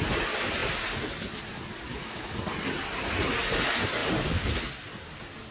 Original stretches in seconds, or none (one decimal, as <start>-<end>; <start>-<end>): 0.0-1.9; 2.4-5.5